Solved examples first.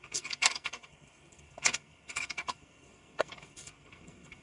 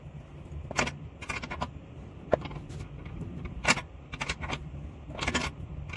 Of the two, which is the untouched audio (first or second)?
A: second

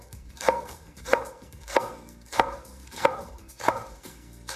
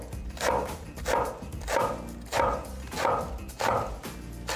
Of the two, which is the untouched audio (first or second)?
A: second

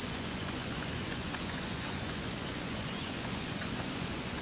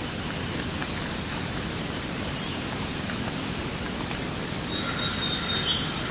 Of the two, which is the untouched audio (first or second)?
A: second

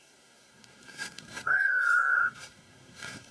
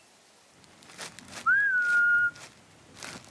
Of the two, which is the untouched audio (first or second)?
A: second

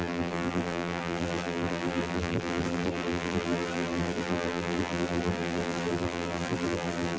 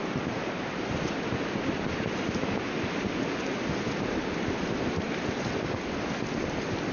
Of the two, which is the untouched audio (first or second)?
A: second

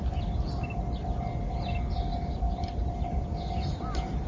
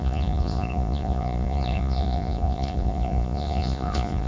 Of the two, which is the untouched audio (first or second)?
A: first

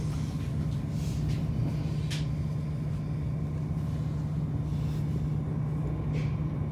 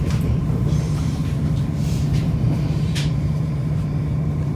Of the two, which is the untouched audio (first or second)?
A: first